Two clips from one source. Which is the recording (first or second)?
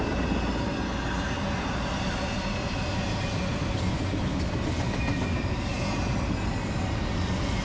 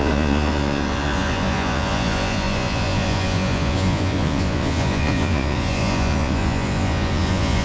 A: first